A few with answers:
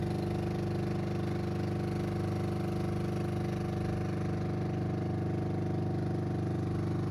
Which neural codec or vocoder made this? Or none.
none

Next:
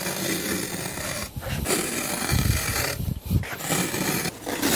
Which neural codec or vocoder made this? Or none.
none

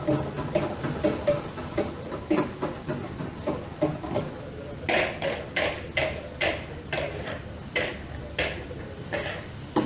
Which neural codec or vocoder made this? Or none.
none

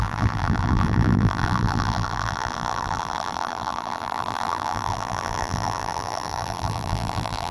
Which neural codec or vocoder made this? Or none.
vocoder, BigVGAN v2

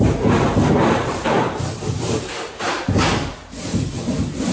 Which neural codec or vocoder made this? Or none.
vocoder, BigVGAN v2